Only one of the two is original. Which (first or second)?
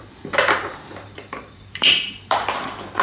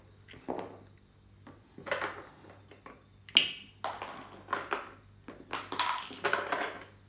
second